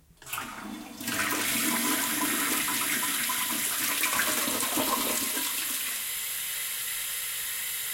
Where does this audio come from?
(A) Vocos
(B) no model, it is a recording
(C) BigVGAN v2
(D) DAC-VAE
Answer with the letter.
B